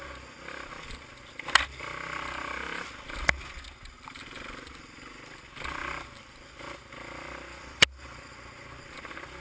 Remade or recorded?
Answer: recorded